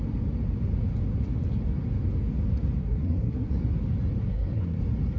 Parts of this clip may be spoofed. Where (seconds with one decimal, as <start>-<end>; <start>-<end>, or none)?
2.8-3.5; 4.2-4.8

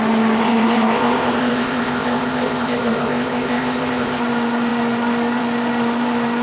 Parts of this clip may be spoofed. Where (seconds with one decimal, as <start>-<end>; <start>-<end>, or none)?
0.4-4.2

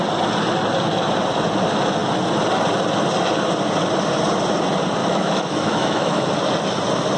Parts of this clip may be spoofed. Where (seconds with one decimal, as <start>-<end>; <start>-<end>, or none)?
5.0-6.3

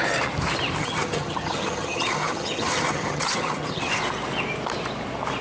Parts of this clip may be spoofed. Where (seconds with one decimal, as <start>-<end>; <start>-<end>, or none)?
0.8-4.0

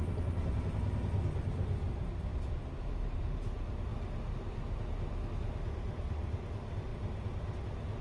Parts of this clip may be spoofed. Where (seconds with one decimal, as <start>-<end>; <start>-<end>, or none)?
none

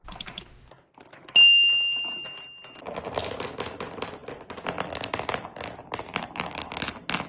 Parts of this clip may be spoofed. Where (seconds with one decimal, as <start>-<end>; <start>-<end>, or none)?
none